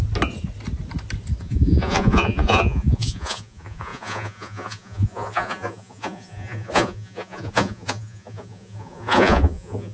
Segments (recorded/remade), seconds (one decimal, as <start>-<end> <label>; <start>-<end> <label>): 0.0-1.4 recorded; 1.4-9.9 remade